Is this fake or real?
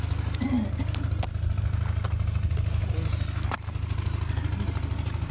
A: real